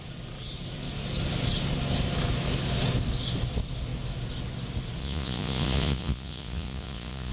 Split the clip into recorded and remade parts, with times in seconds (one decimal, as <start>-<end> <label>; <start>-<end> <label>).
0.0-5.0 recorded; 5.0-7.3 remade